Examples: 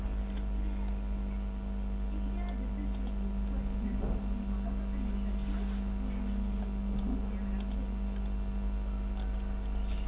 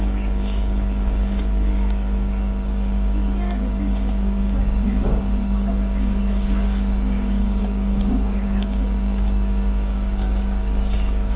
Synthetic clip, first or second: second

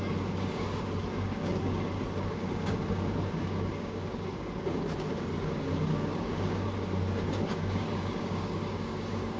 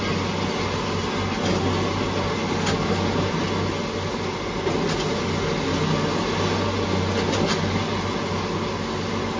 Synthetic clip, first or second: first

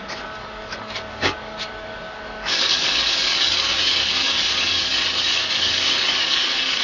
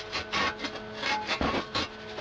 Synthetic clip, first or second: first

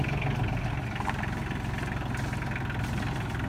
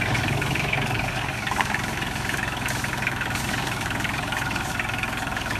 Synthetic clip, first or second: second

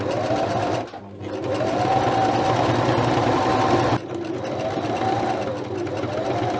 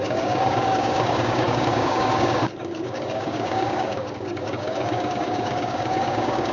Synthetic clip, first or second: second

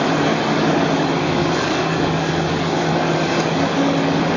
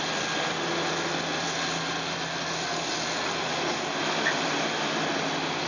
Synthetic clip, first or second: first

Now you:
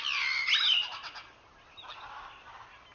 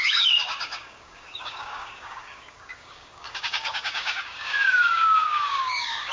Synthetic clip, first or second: second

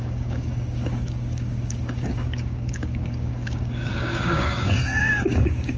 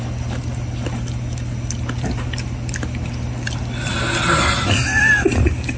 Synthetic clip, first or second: first